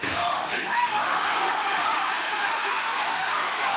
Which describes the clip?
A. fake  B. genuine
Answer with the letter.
A